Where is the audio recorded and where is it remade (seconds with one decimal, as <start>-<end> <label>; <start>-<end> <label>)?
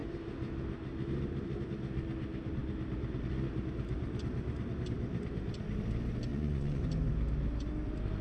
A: 0.0-6.3 recorded; 6.3-6.8 remade; 6.8-8.2 recorded